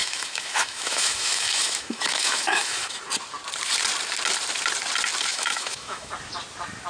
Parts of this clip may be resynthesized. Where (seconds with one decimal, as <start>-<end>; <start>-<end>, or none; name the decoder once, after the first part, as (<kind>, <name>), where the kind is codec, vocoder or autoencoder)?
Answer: 0.0-3.0 (autoencoder, DAC-VAE); 5.3-6.1